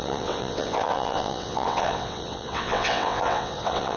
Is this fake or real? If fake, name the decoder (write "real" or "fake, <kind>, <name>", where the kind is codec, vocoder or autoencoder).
fake, vocoder, WaveNeXt